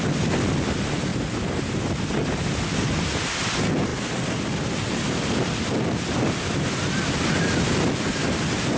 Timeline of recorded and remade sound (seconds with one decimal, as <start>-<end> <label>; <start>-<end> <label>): 0.0-1.1 recorded; 1.1-2.4 remade; 2.4-8.8 recorded